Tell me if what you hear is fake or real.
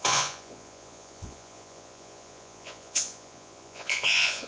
fake